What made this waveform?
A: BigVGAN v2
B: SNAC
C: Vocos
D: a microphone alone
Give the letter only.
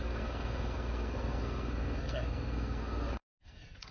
B